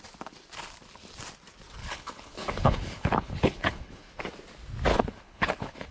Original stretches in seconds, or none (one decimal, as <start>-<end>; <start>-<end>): 0.0-1.8; 4.2-4.9